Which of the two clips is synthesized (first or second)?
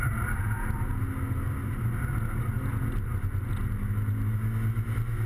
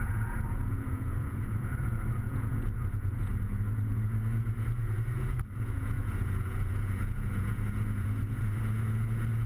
second